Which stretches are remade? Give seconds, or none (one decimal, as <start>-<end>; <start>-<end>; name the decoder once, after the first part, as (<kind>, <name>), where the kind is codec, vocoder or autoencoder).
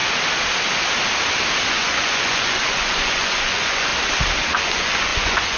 1.7-3.9 (vocoder, Vocos); 4.6-5.6